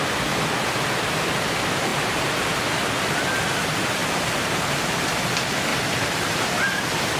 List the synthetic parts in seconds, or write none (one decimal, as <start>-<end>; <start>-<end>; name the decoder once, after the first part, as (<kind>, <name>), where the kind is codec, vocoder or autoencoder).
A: 1.9-2.6 (vocoder, BigVGAN v2); 4.0-5.1; 5.7-6.5